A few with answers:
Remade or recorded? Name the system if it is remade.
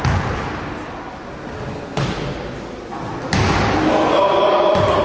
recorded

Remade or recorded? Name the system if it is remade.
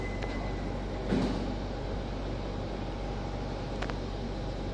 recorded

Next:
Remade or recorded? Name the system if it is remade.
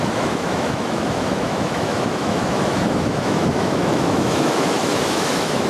remade, autoencoder, DAC-VAE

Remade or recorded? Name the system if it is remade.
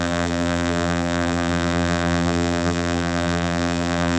remade, vocoder, BigVGAN v2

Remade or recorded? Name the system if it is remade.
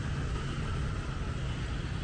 recorded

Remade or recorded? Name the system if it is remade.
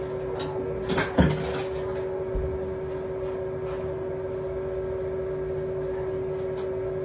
recorded